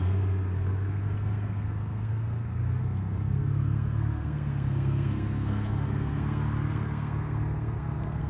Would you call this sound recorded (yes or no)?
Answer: no